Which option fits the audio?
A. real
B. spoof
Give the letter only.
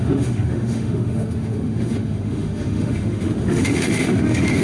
B